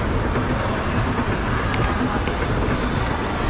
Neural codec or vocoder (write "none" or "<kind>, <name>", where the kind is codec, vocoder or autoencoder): none